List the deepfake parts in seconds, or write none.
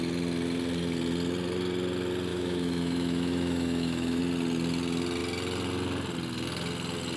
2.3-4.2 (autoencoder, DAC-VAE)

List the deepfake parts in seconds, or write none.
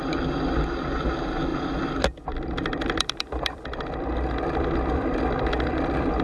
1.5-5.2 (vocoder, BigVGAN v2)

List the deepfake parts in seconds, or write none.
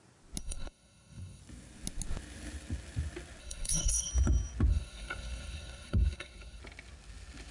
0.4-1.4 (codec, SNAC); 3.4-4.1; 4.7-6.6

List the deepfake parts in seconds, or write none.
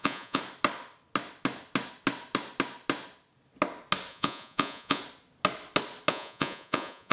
0.0-0.4 (vocoder, Vocos); 4.1-5.0; 6.1-7.1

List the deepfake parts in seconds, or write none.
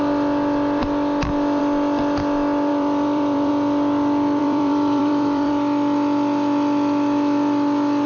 2.7-3.5 (vocoder, BigVGAN v2); 4.4-5.5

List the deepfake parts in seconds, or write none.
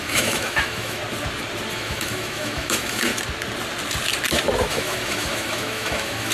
0.0-1.0 (autoencoder, DAC-VAE); 1.7-3.1; 4.7-6.3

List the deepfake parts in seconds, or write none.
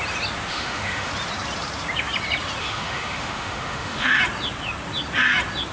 0.5-1.1 (autoencoder, DAC-VAE); 2.6-4.2